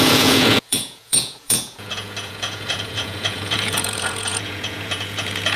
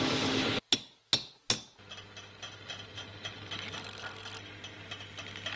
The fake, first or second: first